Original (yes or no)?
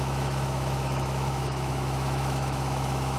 no